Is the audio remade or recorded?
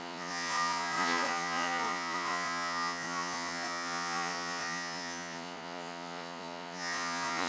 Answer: remade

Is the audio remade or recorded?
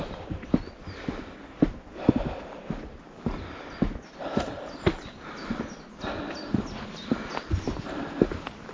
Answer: recorded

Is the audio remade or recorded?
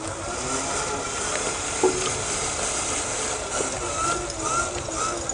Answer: recorded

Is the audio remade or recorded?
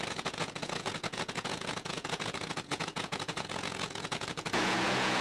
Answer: remade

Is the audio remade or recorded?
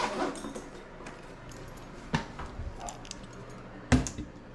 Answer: recorded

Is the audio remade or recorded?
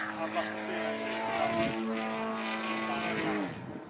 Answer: recorded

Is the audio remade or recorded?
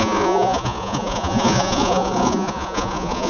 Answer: remade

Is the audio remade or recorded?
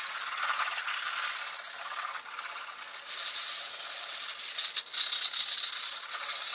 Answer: recorded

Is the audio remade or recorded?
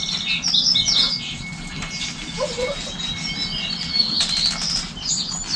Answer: recorded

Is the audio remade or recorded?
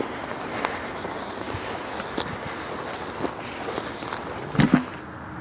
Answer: recorded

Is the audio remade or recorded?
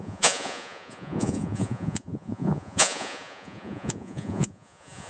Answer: remade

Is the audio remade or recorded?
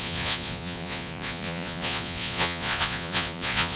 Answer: remade